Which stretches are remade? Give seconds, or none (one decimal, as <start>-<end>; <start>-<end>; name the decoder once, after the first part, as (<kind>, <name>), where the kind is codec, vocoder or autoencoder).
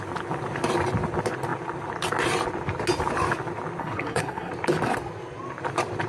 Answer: 3.8-4.5 (codec, SNAC)